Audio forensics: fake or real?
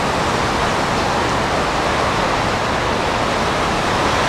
real